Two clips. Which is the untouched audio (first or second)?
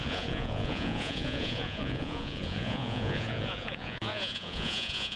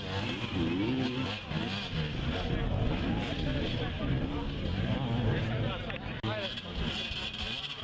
second